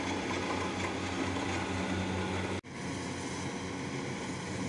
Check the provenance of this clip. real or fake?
real